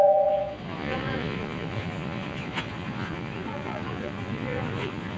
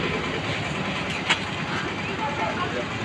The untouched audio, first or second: second